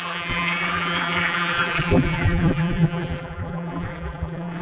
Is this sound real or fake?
fake